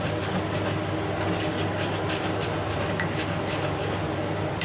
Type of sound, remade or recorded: recorded